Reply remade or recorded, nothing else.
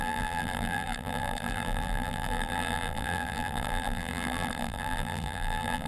remade